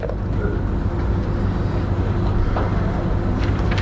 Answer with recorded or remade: recorded